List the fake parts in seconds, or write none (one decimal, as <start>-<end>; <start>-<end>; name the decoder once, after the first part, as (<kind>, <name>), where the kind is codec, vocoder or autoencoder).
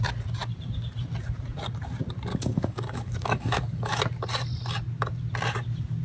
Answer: 2.3-4.0 (codec, DAC)